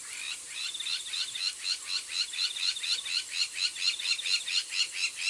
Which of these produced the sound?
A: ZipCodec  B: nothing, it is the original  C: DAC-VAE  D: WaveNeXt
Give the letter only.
B